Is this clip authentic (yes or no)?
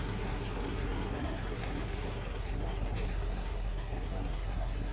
no